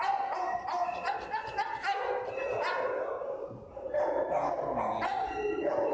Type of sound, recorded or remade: recorded